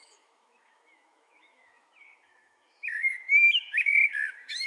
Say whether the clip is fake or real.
fake